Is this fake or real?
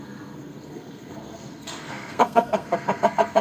fake